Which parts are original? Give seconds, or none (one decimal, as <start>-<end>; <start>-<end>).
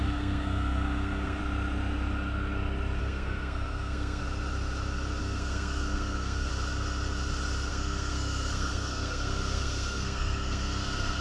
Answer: 1.4-3.0; 4.2-5.2; 6.5-7.7